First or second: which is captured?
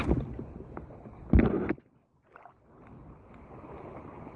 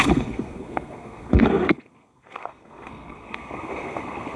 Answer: first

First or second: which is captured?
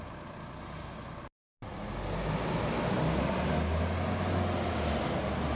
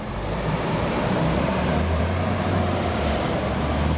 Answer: first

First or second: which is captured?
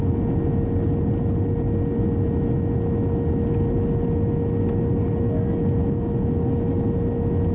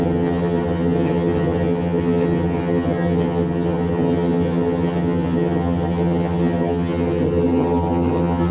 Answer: first